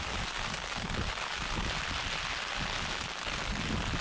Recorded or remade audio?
recorded